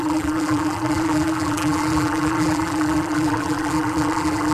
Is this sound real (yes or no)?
no